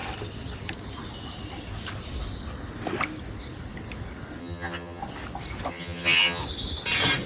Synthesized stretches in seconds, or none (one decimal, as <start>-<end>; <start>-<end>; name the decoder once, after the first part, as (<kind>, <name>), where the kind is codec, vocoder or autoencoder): 4.4-5.0 (vocoder, HiFi-GAN); 5.7-6.4

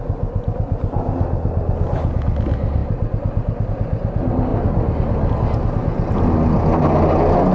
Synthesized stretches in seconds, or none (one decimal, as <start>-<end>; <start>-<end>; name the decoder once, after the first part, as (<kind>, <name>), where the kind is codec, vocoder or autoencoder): none

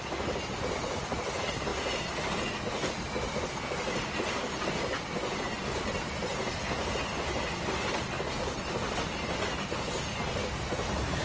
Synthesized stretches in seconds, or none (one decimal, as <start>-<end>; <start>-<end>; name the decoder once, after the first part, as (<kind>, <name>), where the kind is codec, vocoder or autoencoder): none